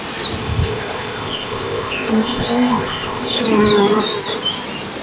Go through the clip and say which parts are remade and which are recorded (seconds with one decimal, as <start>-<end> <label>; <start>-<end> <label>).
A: 0.0-0.4 recorded; 0.4-3.4 remade; 3.4-5.0 recorded

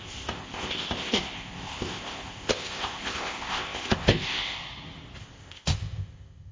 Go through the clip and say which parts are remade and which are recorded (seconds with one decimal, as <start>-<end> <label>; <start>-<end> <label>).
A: 0.0-4.6 remade; 4.6-5.2 recorded; 5.2-6.5 remade

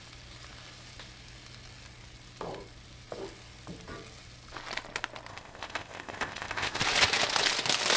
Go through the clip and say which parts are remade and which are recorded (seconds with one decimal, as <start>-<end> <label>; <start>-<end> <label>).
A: 0.0-5.3 recorded; 5.3-6.8 remade; 6.8-8.0 recorded

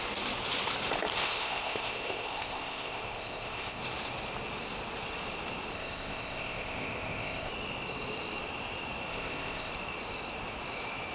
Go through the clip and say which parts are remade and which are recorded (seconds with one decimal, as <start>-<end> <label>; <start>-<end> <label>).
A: 0.0-1.2 recorded; 1.2-3.8 remade; 3.8-5.7 recorded; 5.7-7.5 remade; 7.5-9.1 recorded; 9.1-9.7 remade; 9.7-11.1 recorded

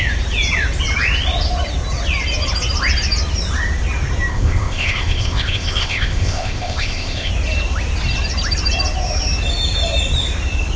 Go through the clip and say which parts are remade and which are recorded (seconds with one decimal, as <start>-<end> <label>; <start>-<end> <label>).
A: 0.0-4.3 recorded; 4.3-7.3 remade; 7.3-10.8 recorded